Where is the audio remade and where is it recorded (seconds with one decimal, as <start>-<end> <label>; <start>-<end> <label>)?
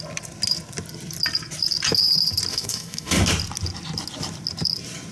0.0-2.5 recorded; 2.5-3.2 remade; 3.2-5.1 recorded